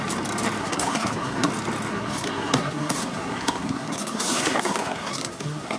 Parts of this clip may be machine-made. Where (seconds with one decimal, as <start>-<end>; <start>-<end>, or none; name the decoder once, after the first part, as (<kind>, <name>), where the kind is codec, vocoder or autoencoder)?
0.6-1.5 (codec, SNAC); 1.9-5.8